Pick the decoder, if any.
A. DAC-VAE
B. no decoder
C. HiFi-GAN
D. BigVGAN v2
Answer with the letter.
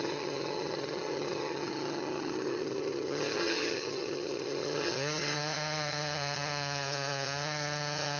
C